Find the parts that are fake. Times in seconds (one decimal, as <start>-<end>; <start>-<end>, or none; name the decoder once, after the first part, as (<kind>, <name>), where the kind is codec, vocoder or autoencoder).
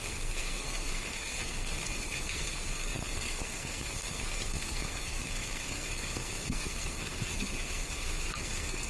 0.0-8.9 (codec, SNAC)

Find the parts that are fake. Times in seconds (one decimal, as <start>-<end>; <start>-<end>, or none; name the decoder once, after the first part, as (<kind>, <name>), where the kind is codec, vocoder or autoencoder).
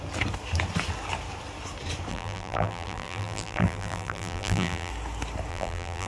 2.1-4.9 (vocoder, BigVGAN v2); 5.5-6.1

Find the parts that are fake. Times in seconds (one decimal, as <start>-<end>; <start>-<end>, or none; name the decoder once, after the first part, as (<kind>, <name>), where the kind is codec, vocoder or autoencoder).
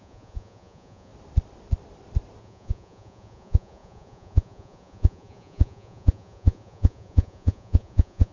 0.0-1.1 (vocoder, Vocos); 2.4-8.3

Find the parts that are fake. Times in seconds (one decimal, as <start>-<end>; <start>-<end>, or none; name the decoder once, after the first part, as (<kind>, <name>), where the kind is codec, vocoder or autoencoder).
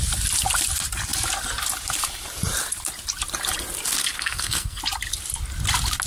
4.0-4.8 (codec, SNAC)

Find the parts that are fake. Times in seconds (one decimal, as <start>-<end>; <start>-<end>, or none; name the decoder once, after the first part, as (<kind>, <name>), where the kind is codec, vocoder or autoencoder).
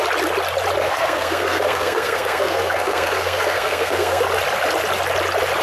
0.8-4.2 (codec, SNAC)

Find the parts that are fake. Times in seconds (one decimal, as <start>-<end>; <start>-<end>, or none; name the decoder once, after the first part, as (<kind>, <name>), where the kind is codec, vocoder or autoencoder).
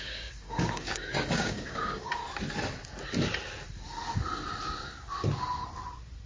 0.0-2.2 (codec, DAC)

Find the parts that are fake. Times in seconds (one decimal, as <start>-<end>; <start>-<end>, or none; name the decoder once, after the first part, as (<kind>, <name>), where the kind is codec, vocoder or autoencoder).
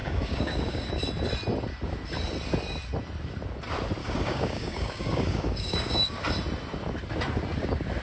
0.0-0.9 (codec, DAC); 4.0-6.2